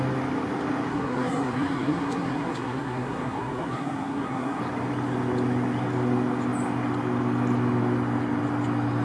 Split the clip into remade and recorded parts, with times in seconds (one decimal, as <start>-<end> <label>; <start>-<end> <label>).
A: 0.0-0.9 recorded; 0.9-4.6 remade; 4.6-9.0 recorded